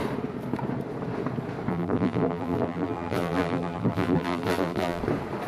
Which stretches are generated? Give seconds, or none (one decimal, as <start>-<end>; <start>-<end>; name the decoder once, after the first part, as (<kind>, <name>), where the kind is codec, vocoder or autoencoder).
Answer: 1.7-5.0 (vocoder, BigVGAN v2)